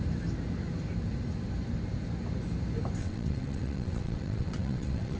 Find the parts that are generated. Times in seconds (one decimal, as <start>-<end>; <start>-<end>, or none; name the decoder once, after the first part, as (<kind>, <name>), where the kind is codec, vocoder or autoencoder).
3.0-5.2 (vocoder, WaveNeXt)